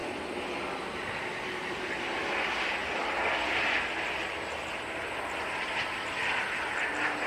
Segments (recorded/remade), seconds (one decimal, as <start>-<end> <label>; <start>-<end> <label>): 0.0-7.3 recorded